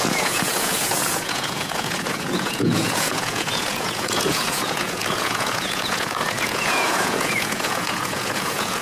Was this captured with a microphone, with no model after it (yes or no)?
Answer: no